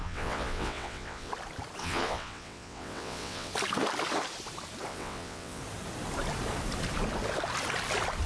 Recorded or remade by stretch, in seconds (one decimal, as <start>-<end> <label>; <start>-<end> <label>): 0.0-1.3 remade; 1.3-1.8 recorded; 1.8-3.5 remade; 3.5-4.9 recorded; 4.9-5.6 remade; 5.6-8.3 recorded